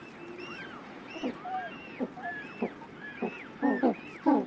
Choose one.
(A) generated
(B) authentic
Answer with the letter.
B